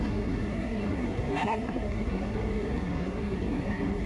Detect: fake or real fake